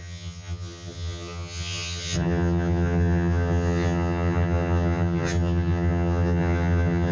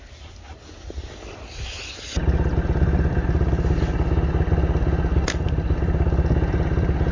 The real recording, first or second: second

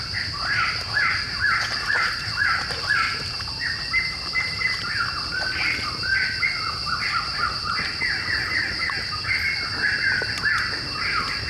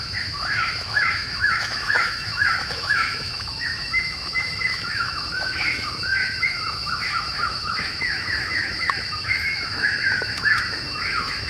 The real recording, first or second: first